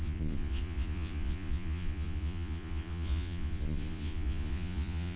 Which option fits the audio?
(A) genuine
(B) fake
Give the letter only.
B